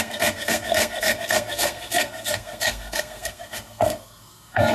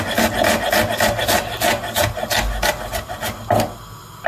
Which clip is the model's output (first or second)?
first